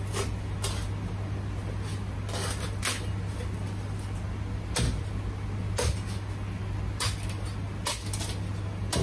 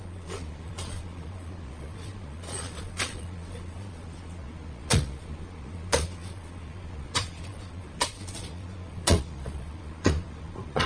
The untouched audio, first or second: first